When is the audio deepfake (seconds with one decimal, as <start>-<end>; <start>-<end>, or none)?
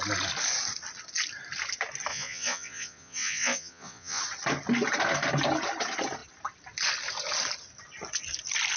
2.1-4.2